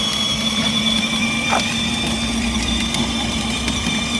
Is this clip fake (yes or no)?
yes